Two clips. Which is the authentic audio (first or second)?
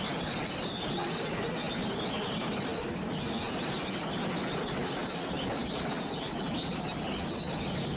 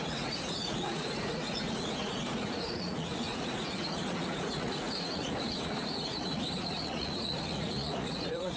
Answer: first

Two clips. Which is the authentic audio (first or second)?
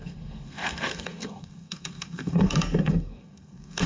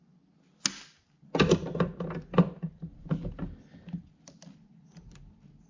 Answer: second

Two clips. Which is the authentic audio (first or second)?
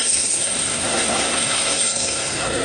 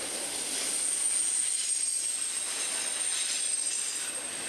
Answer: second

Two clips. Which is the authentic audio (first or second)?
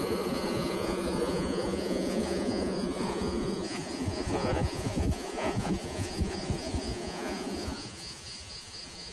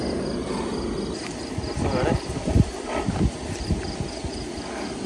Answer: second